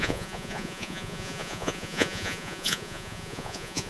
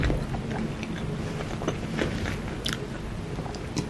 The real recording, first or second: second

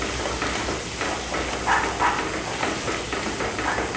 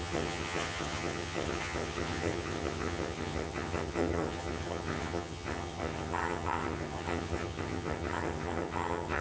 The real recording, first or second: first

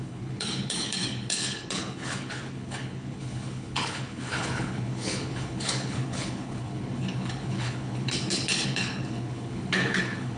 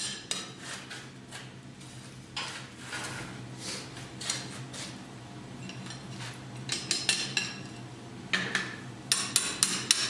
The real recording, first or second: second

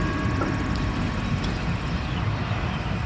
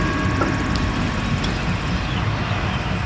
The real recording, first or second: second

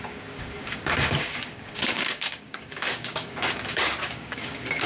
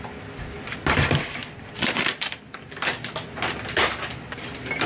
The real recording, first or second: second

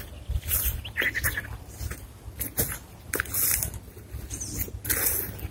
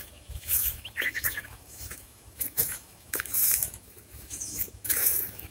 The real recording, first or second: first